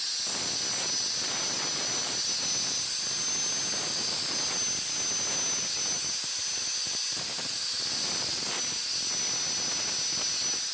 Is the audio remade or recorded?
recorded